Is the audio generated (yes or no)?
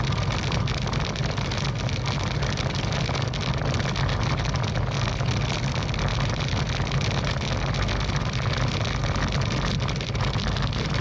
no